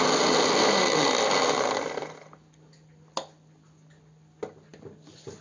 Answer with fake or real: real